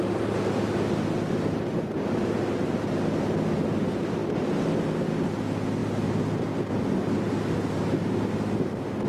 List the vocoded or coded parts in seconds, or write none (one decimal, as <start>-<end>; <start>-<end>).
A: 4.2-5.1